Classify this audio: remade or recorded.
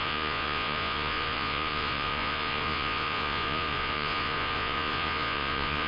remade